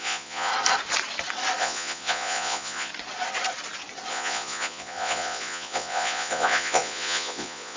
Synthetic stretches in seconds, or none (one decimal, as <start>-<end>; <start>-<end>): 0.0-0.5; 1.6-2.9; 4.1-7.8